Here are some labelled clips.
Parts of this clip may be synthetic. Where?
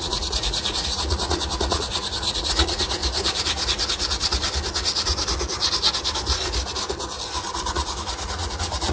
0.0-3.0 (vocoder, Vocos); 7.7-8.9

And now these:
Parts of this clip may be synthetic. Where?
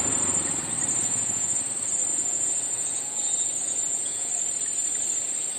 1.0-1.6 (vocoder, Vocos); 2.1-4.3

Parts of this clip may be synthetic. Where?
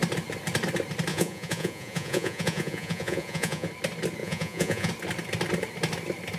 1.1-3.7 (vocoder, Vocos); 4.2-4.9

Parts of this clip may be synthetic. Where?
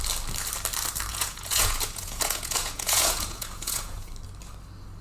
1.1-4.1 (vocoder, Vocos)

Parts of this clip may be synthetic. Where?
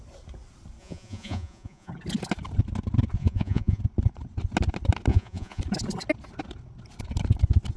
0.8-1.9 (vocoder, Vocos); 3.2-3.8; 5.1-5.6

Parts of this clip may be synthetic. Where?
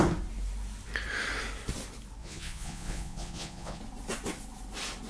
2.2-3.8 (vocoder, Vocos)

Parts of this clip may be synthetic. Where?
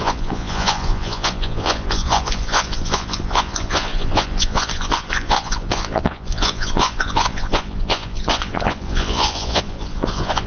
0.0-10.5 (vocoder, Vocos)